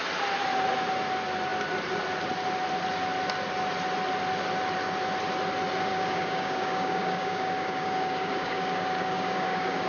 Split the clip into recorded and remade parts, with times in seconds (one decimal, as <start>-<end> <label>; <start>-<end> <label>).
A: 0.0-5.9 recorded; 5.9-9.9 remade